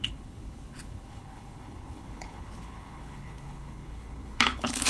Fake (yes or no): yes